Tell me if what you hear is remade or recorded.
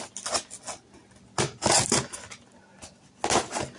recorded